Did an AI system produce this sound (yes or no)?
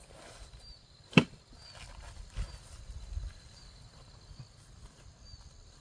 no